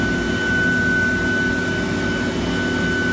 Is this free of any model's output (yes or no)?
yes